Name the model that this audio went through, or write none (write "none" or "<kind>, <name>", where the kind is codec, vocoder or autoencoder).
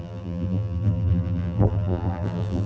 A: vocoder, BigVGAN v2